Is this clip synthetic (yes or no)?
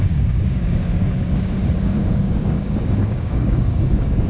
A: yes